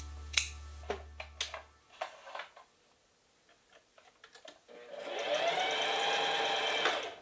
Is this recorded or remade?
recorded